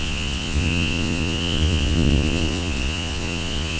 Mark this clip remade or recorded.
remade